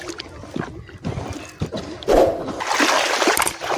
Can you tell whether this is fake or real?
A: real